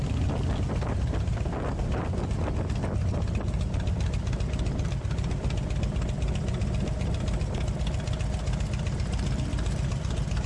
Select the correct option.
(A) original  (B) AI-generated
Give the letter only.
A